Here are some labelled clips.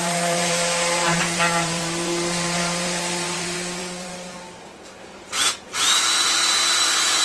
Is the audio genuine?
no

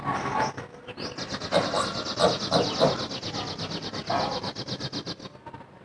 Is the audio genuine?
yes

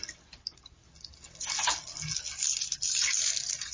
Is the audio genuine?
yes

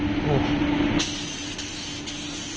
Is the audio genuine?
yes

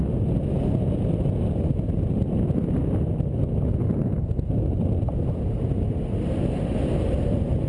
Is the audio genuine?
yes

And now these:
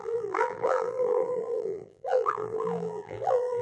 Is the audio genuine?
no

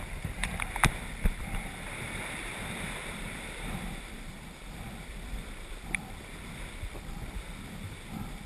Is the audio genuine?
no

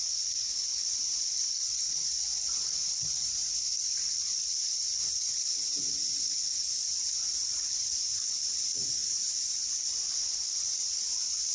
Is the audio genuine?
yes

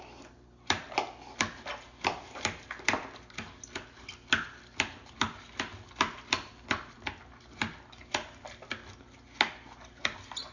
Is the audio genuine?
yes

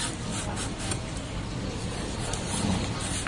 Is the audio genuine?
yes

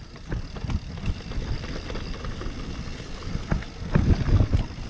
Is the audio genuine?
yes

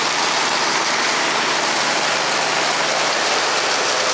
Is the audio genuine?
no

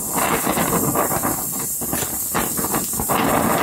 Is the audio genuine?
yes